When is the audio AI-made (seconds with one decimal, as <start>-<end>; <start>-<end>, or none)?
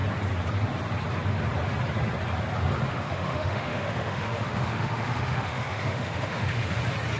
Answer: 2.9-6.8